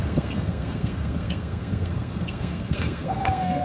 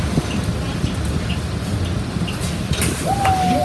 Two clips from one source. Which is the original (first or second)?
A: second